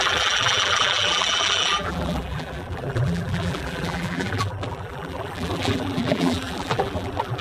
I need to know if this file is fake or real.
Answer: fake